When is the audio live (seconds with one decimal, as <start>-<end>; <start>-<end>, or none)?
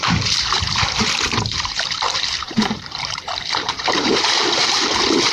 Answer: none